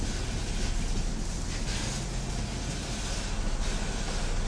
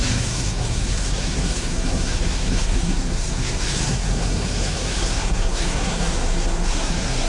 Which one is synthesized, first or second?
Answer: second